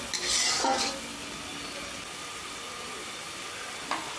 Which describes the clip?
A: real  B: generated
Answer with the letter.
A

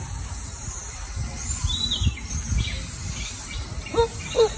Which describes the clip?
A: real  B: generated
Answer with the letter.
A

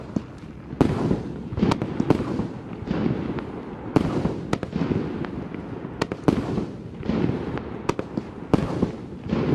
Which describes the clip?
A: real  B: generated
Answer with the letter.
A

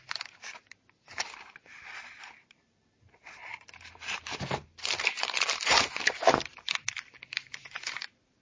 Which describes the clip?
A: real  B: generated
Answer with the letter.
B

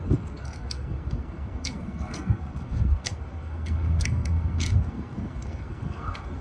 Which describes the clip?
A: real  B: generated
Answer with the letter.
B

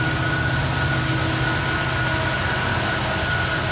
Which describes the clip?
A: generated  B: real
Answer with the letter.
B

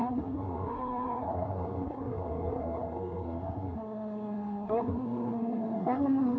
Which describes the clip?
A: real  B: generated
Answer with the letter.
B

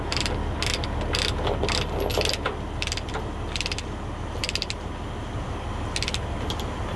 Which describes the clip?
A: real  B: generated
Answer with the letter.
A